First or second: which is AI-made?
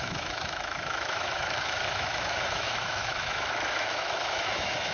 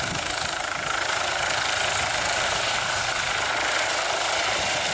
first